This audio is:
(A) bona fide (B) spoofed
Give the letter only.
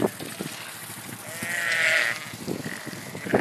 A